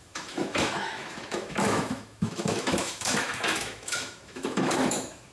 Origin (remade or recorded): remade